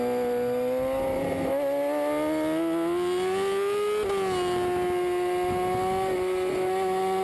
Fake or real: real